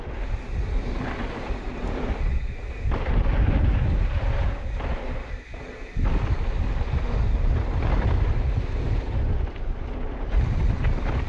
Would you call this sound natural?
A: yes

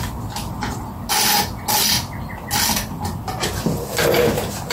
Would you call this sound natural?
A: yes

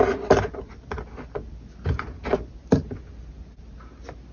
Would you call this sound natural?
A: yes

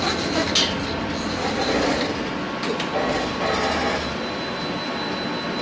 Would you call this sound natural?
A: yes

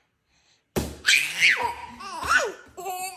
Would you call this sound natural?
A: yes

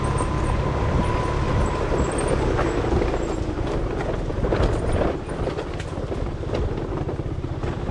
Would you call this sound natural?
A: yes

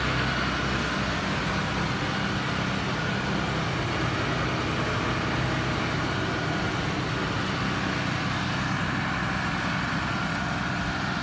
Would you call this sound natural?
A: yes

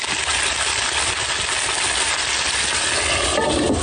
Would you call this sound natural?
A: yes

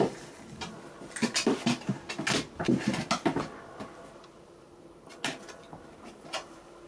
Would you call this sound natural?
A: yes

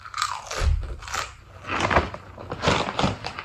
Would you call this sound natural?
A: yes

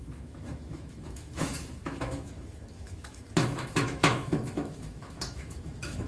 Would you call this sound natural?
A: no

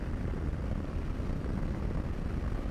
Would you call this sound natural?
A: yes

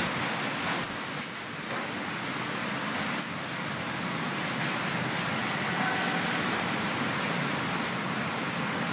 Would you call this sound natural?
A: yes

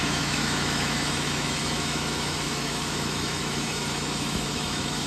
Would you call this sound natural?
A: no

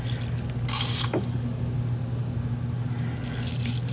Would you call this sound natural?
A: yes